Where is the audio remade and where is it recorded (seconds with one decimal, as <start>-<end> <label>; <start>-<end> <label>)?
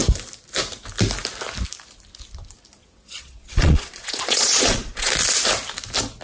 0.0-2.8 recorded; 2.8-5.1 remade; 5.1-6.2 recorded